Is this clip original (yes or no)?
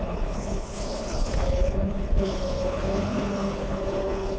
no